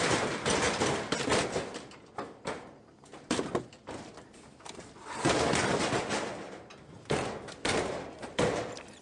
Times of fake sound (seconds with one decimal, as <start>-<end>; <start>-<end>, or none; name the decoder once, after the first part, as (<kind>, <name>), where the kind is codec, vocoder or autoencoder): 0.0-9.0 (vocoder, BigVGAN v2)